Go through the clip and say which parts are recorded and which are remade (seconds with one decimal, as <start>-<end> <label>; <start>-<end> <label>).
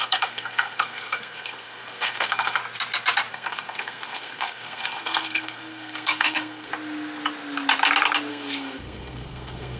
0.0-2.6 remade; 2.6-3.3 recorded; 3.3-6.7 remade; 6.7-8.3 recorded; 8.3-9.8 remade